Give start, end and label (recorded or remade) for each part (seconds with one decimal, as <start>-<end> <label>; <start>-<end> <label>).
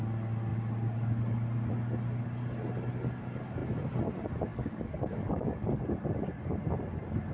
0.0-4.5 recorded; 4.5-5.8 remade; 5.8-7.3 recorded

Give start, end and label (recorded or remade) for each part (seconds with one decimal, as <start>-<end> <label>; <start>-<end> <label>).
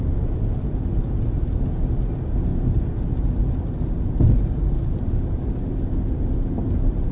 0.0-7.1 recorded